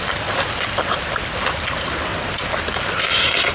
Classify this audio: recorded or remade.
recorded